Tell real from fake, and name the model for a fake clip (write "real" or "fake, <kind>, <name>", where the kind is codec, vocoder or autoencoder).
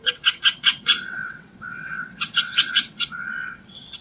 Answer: fake, vocoder, WaveNeXt